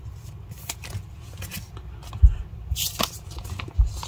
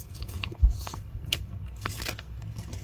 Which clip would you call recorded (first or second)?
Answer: first